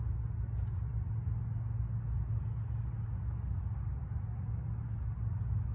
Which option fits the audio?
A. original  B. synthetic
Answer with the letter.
A